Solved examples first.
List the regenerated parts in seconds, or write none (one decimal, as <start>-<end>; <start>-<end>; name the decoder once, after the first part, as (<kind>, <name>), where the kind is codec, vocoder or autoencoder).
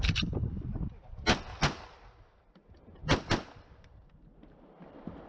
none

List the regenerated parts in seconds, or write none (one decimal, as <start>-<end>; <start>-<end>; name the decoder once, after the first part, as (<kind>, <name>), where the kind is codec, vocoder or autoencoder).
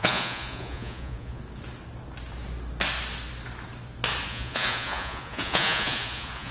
0.0-1.4 (vocoder, Vocos); 4.3-6.5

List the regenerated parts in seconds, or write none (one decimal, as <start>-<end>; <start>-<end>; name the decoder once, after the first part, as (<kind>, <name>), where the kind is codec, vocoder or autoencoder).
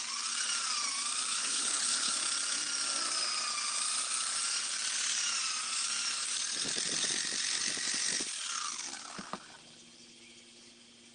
1.3-2.1 (codec, HILCodec)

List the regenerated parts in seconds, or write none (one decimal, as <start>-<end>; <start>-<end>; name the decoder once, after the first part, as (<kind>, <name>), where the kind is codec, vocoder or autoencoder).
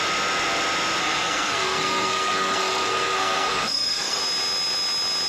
1.0-4.2 (codec, SNAC)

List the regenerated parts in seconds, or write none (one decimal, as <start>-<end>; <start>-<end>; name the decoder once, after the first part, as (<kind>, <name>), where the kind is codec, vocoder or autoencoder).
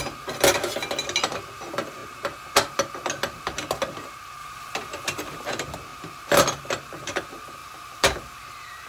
4.4-5.5 (vocoder, BigVGAN v2); 7.6-8.4